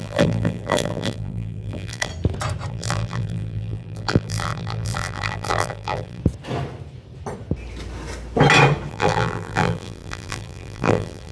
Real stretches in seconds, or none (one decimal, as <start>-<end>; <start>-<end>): 2.1-2.7; 6.2-8.9